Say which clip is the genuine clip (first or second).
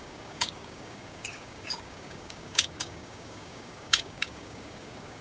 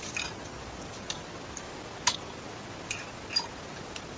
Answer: second